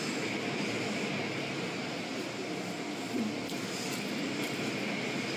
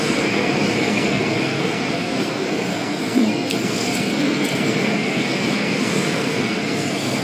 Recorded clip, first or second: first